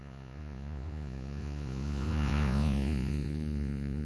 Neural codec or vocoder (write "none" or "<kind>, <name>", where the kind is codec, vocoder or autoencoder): vocoder, Vocos